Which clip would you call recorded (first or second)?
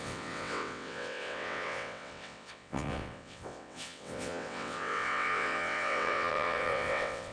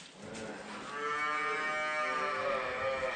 second